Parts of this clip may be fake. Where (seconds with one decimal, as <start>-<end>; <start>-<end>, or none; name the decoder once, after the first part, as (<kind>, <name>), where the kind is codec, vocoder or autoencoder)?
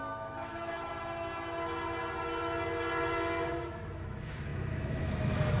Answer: 0.0-0.9 (autoencoder, DAC-VAE); 3.9-5.6